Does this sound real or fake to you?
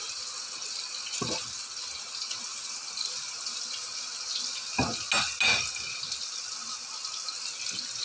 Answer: real